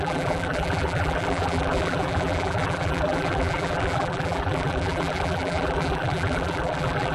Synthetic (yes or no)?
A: yes